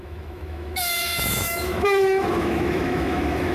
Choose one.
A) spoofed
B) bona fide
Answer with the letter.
A